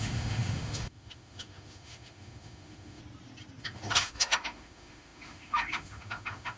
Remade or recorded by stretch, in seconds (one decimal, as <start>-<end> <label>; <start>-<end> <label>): 0.0-3.0 remade; 3.0-3.6 recorded; 3.6-6.6 remade